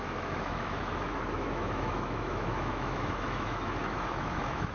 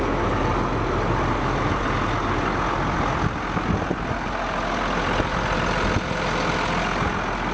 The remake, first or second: first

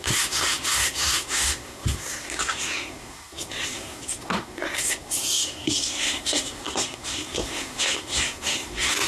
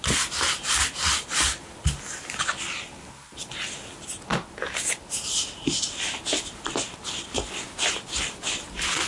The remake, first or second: first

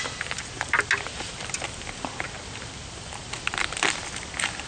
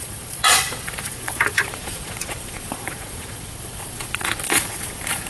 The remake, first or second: second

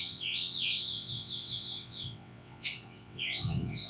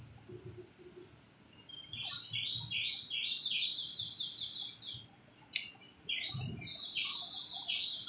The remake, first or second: first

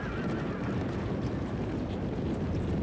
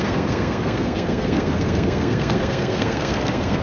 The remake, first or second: second